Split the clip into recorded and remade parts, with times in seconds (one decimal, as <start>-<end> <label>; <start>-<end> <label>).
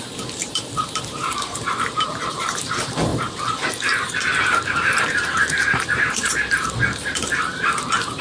0.0-8.2 remade